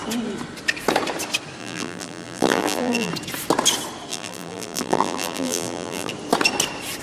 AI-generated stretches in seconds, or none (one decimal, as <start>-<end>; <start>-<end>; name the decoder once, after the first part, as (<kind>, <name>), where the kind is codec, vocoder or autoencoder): 1.6-3.1 (vocoder, BigVGAN v2); 4.1-6.1